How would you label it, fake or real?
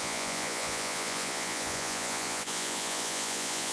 fake